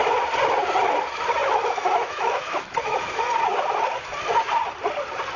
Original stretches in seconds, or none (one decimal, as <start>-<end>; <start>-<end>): 0.0-1.4; 3.2-5.4